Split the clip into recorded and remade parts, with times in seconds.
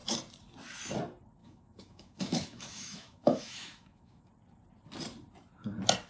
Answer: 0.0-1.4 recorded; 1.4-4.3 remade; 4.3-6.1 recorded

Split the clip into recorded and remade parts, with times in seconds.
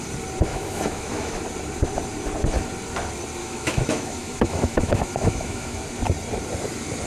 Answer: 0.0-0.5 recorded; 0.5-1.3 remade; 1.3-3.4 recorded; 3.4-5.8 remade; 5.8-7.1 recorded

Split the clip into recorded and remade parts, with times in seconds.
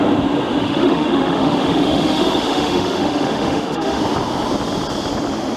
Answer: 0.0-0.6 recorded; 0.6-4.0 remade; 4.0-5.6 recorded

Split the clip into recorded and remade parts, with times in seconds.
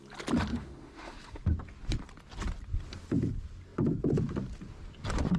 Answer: 0.0-0.5 recorded; 0.5-1.4 remade; 1.4-5.4 recorded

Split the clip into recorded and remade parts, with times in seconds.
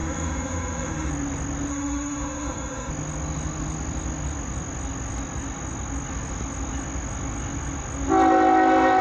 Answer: 0.0-1.1 remade; 1.1-1.7 recorded; 1.7-2.9 remade; 2.9-9.0 recorded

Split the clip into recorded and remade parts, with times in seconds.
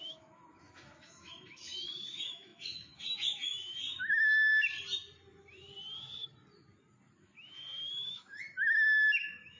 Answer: 0.0-4.5 remade; 4.5-7.2 recorded; 7.2-9.6 remade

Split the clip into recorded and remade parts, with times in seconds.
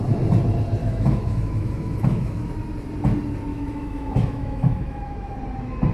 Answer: 0.0-0.8 recorded; 0.8-2.5 remade; 2.5-3.5 recorded; 3.5-5.4 remade; 5.4-5.9 recorded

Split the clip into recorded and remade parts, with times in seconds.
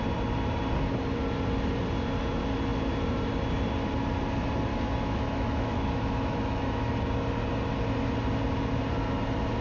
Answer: 0.0-4.7 recorded; 4.7-6.9 remade; 6.9-9.6 recorded